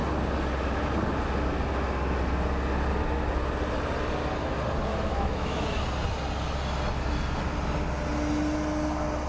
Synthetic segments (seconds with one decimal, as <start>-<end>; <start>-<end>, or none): 4.9-5.8